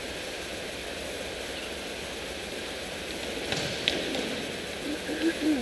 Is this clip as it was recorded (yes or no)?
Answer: yes